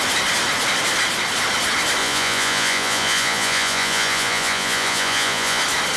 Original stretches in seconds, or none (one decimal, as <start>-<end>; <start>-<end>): 0.0-2.0; 5.6-6.0

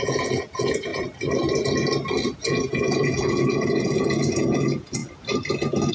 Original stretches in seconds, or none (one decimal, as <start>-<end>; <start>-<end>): 0.9-2.4; 5.0-5.9